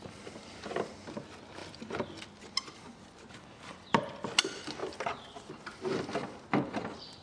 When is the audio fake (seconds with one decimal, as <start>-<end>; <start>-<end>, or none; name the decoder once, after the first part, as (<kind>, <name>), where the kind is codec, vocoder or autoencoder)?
none